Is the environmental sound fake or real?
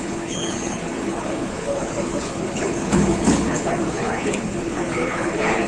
fake